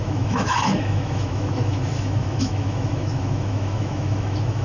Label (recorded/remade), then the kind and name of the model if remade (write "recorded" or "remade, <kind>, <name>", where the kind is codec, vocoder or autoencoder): remade, autoencoder, DAC-VAE